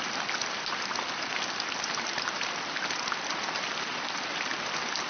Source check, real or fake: real